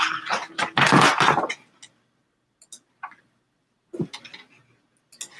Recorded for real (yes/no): yes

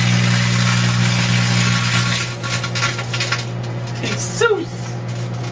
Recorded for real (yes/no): yes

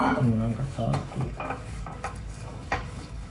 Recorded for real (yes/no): no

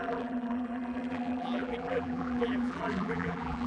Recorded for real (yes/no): no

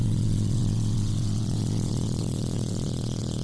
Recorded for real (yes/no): no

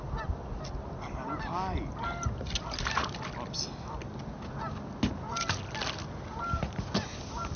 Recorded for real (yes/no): yes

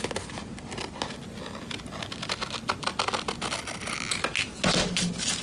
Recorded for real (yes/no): yes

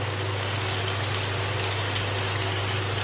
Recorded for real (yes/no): yes